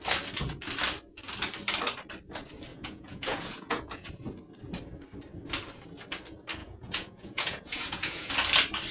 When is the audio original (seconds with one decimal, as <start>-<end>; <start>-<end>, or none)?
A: 0.0-2.7; 4.1-6.6; 8.3-8.9